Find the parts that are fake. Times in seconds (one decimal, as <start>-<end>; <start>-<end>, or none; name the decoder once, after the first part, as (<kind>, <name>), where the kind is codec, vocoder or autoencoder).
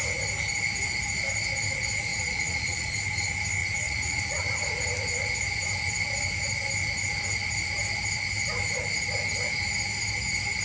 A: 2.1-3.0 (vocoder, Vocos); 3.6-4.7